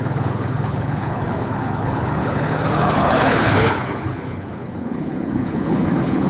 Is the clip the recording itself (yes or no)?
no